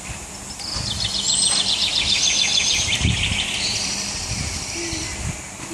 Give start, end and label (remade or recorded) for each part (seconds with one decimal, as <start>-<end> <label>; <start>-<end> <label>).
0.0-2.5 recorded; 2.5-4.7 remade; 4.7-5.7 recorded